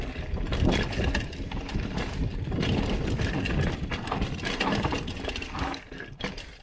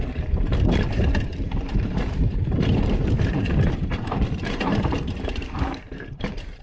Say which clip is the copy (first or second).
second